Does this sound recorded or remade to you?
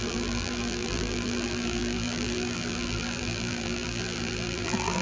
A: remade